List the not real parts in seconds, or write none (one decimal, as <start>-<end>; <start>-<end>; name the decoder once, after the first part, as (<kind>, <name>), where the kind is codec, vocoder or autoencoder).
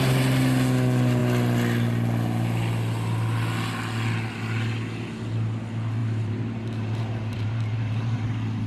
6.0-8.7 (vocoder, BigVGAN v2)